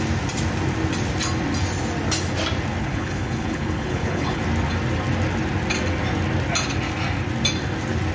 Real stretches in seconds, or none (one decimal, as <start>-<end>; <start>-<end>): 0.0-2.8; 4.4-8.1